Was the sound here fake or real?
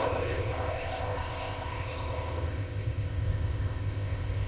fake